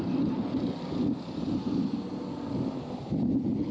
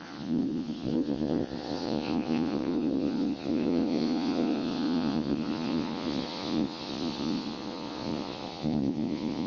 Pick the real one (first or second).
first